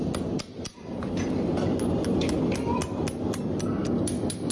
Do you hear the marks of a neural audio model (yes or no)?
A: no